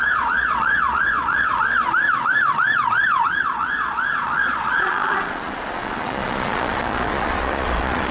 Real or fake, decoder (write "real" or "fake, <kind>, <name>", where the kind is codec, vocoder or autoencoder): fake, vocoder, Vocos